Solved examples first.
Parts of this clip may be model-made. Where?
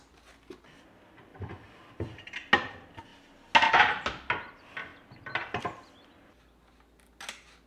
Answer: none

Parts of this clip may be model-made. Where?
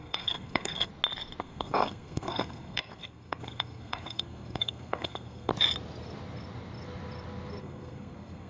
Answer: 0.0-0.9; 1.4-5.5; 7.6-8.5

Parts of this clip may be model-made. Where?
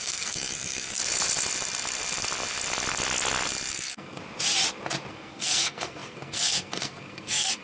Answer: 0.0-1.0; 3.7-4.2; 5.1-7.6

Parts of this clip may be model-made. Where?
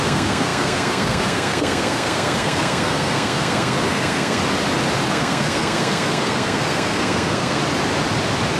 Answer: 0.0-4.4; 5.1-7.6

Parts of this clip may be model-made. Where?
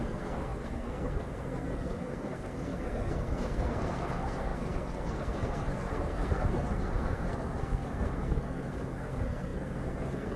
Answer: 0.0-10.4